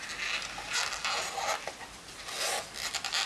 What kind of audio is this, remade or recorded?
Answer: recorded